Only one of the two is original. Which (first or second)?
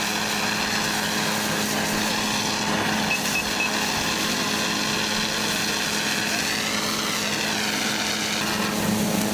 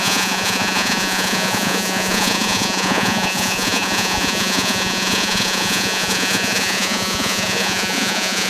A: first